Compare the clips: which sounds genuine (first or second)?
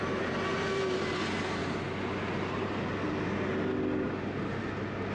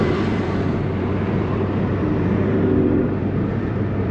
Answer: first